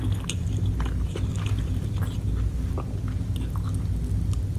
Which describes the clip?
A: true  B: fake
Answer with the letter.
A